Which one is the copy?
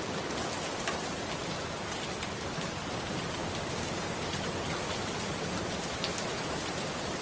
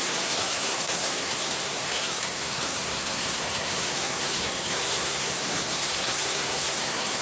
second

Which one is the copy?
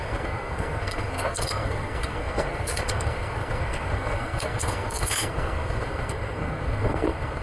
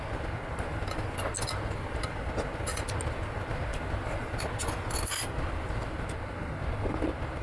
first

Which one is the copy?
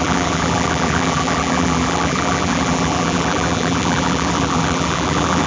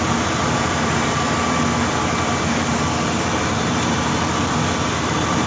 first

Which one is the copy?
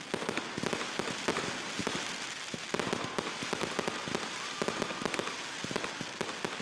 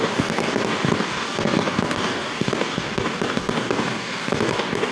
second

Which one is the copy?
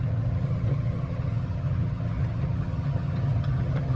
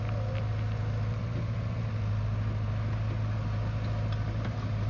first